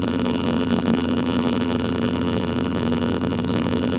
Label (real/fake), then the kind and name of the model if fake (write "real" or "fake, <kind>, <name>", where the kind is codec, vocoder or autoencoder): fake, vocoder, BigVGAN v2